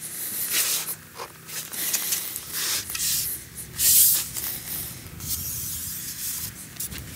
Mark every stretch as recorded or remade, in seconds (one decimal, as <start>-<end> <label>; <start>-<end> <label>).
0.0-7.2 recorded